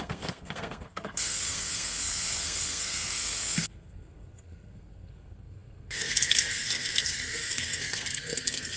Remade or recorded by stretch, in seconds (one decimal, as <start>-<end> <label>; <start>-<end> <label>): 0.0-8.8 remade